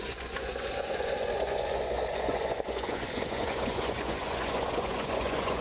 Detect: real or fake fake